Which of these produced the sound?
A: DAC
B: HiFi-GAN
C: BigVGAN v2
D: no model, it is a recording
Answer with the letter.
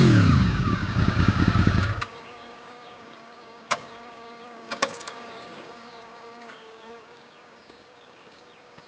A